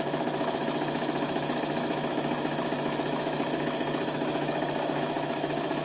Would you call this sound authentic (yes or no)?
no